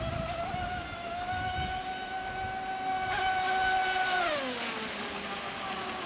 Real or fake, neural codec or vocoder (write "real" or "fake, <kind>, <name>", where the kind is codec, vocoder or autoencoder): real